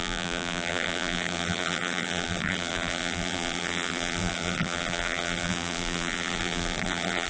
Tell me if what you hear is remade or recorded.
remade